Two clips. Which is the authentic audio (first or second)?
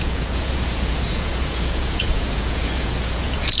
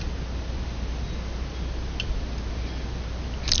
second